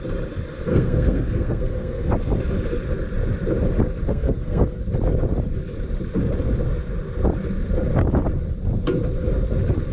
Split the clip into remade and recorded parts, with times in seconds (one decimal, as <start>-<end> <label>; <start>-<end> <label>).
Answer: 0.0-0.7 recorded; 0.7-2.1 remade; 2.1-4.1 recorded; 4.1-4.8 remade; 4.8-9.9 recorded